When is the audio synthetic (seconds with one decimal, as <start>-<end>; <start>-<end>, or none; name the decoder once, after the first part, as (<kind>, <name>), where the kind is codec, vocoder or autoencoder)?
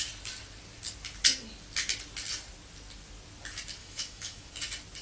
3.8-4.5 (autoencoder, DAC-VAE)